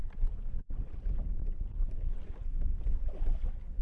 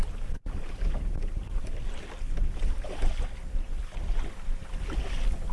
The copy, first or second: first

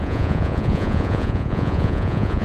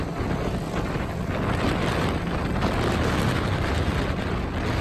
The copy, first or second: first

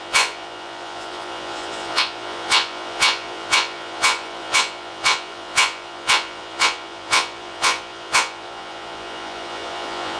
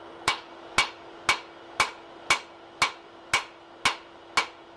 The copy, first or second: first